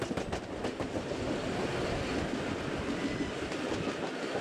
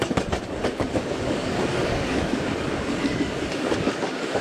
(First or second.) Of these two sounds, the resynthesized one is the second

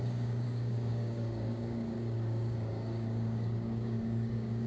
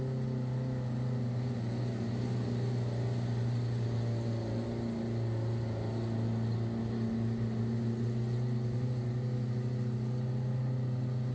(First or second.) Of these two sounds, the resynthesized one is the first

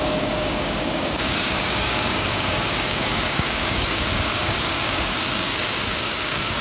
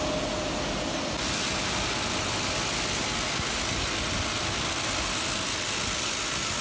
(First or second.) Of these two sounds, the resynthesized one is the first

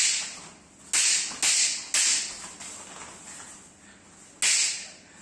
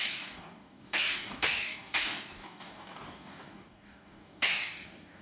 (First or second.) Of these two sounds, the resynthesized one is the second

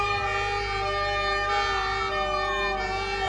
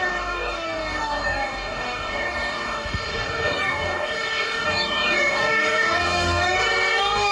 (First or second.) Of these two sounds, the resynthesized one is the second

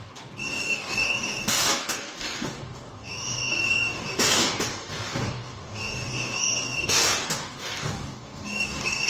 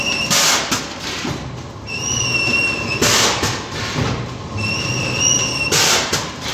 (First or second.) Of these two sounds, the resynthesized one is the first